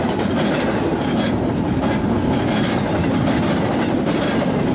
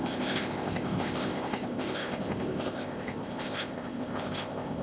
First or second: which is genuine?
first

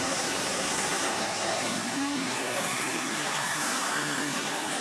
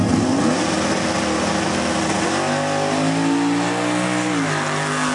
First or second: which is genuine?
second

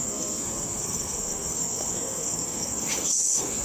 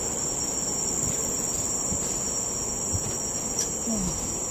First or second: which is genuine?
second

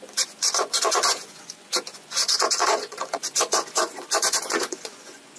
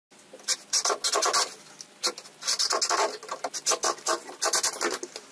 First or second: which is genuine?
second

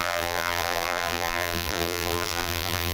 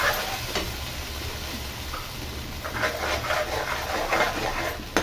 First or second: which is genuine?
second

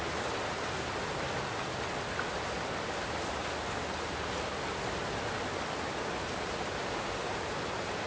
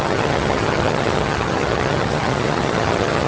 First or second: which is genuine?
first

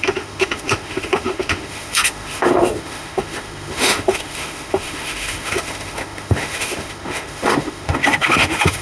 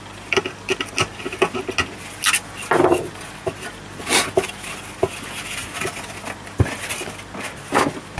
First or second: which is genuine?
second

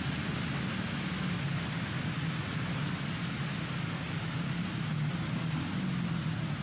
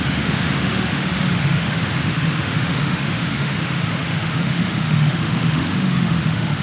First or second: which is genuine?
first